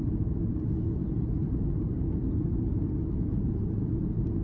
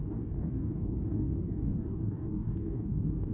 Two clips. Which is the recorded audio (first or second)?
first